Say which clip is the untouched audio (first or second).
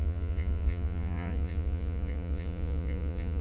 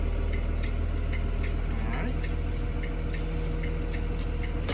second